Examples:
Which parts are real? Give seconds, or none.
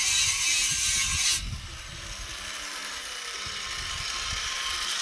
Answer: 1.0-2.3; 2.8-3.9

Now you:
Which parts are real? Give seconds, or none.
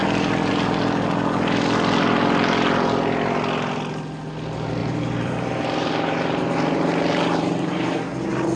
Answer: 0.0-4.8; 8.0-8.6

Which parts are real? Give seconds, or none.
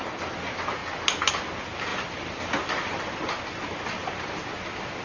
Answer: 0.0-1.9; 3.1-5.0